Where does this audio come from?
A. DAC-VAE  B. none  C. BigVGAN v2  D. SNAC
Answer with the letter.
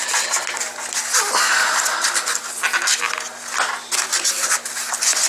B